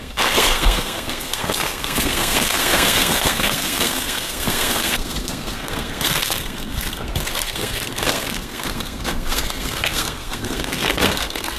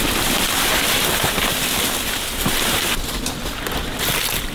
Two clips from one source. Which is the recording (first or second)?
second